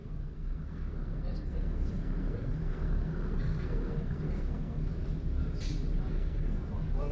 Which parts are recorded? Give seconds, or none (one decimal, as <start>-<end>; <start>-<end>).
4.9-6.1